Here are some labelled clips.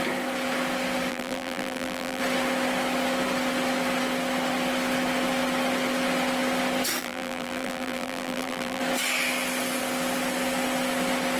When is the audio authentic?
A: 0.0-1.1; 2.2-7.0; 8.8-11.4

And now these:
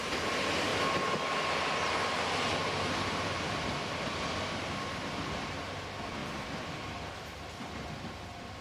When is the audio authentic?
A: 0.0-8.6

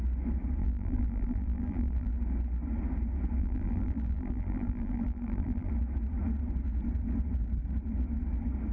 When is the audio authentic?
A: 0.0-0.6; 2.1-3.4; 5.7-8.7

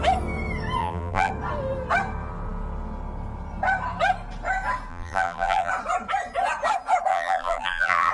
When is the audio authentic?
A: 0.0-0.8; 1.3-4.9; 5.7-7.1

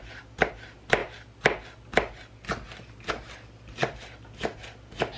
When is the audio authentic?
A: 1.0-3.1

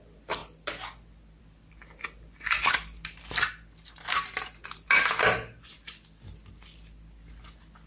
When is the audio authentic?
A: 0.0-7.9